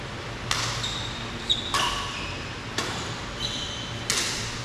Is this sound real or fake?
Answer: real